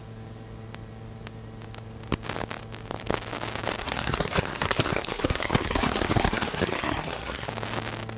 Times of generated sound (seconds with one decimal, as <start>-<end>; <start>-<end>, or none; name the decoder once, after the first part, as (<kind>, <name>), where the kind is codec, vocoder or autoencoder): 3.8-7.5 (codec, SNAC)